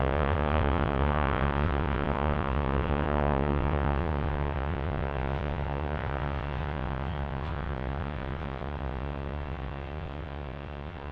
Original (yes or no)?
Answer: no